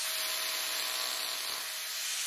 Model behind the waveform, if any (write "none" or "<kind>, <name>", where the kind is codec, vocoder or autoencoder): none